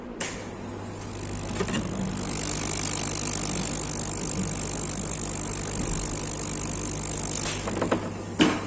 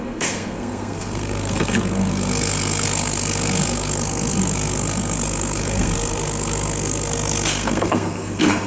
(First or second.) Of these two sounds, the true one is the first